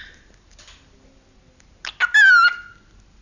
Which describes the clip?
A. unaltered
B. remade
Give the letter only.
A